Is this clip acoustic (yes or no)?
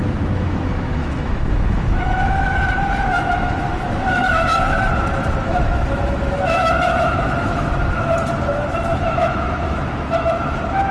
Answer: no